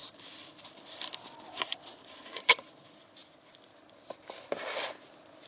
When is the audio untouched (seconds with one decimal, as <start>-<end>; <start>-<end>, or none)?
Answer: 0.0-1.9; 2.7-5.5